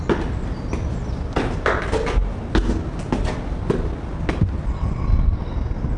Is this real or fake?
real